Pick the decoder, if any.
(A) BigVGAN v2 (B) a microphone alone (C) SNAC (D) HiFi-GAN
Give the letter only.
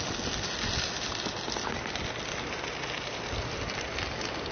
B